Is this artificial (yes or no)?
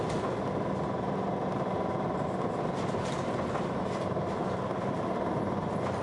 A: no